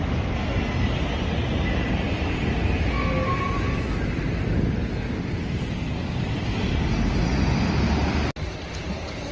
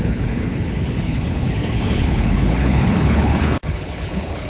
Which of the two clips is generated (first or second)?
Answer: second